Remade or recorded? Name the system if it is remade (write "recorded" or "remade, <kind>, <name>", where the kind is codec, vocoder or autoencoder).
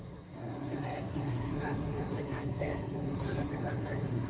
remade, codec, SNAC